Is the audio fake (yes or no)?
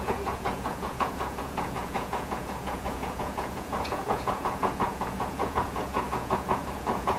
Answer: yes